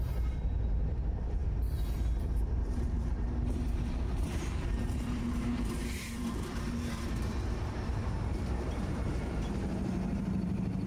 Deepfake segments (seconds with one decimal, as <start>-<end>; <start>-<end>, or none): 0.0-10.9